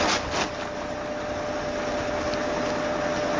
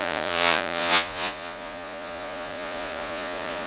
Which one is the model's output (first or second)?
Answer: second